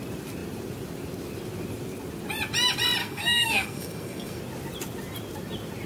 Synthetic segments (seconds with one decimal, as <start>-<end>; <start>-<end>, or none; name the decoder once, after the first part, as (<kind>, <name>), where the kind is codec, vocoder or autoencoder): 3.0-4.4 (codec, SNAC)